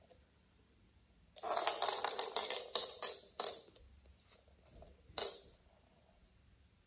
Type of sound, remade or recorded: recorded